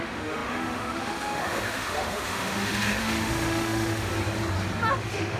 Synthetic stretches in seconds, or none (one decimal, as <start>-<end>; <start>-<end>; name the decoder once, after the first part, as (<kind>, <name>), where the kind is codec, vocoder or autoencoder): 0.0-4.1 (autoencoder, DAC-VAE); 4.9-5.4